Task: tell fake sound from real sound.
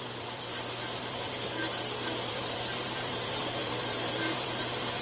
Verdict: fake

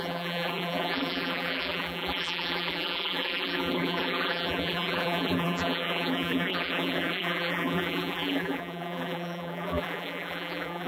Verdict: fake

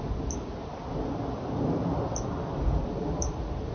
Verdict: real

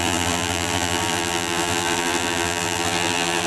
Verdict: fake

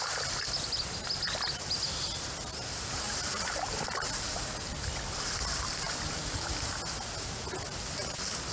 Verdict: real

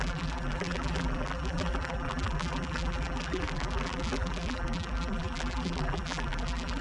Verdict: fake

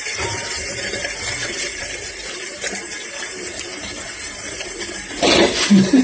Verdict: fake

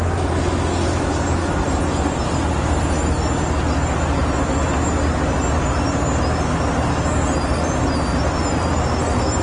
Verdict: real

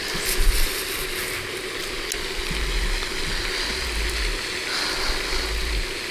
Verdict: real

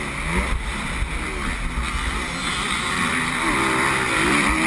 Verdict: real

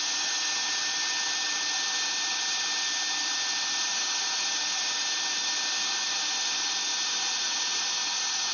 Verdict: real